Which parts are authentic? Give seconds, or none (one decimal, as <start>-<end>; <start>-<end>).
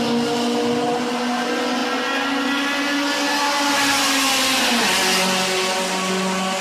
0.0-6.6